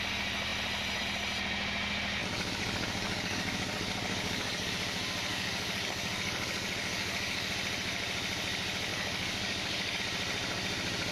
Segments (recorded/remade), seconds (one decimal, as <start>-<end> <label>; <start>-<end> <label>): 0.0-2.2 recorded; 2.2-4.7 remade; 4.7-5.3 recorded; 5.3-7.5 remade; 7.5-8.9 recorded; 8.9-10.0 remade; 10.0-11.1 recorded